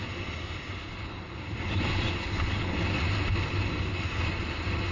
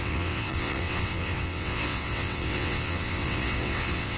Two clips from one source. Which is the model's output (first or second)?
second